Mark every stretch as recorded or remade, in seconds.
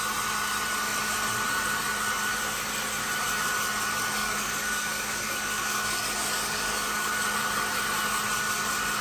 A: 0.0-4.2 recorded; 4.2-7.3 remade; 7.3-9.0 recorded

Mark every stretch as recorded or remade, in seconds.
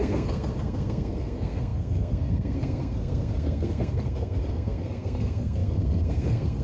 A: 0.0-6.6 remade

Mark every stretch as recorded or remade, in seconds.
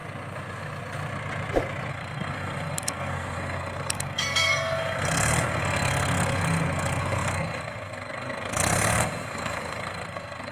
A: 0.0-1.9 recorded; 1.9-10.5 remade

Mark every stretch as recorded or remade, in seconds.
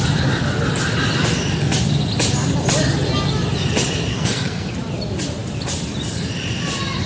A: 0.0-4.1 recorded; 4.1-4.7 remade; 4.7-7.1 recorded